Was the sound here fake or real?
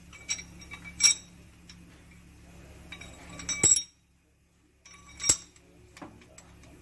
real